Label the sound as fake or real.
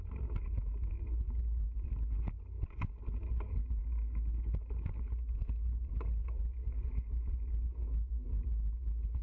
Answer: real